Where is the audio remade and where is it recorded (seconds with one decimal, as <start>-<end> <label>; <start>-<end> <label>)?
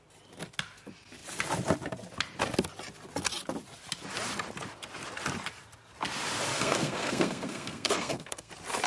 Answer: 0.0-6.5 recorded; 6.5-8.5 remade; 8.5-8.9 recorded